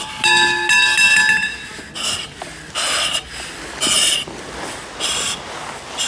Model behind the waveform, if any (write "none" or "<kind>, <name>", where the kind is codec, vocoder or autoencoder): none